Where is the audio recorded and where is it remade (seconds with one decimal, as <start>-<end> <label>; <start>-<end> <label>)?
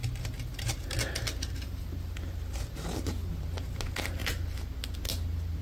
0.0-3.4 remade; 3.4-5.6 recorded